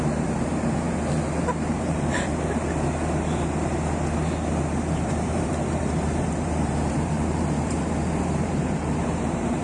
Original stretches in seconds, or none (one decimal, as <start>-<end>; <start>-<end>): 0.5-1.7; 2.3-4.9